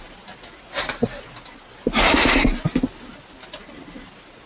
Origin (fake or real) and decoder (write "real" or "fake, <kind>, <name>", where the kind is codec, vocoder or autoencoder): real